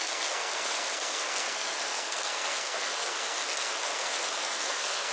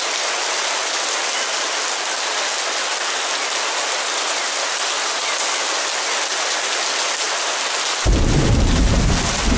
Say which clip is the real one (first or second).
second